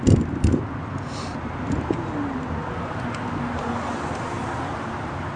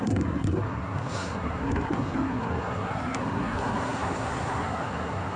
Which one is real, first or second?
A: first